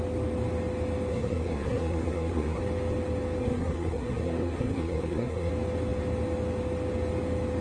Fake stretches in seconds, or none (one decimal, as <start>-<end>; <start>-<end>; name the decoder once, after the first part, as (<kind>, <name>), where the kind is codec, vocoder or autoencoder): 1.1-2.6 (codec, SNAC); 3.4-5.5